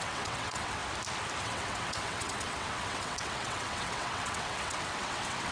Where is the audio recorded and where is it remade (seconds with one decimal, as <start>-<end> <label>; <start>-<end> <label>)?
0.0-0.8 remade; 0.8-1.4 recorded; 1.4-5.5 remade